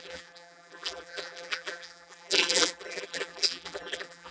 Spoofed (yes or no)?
yes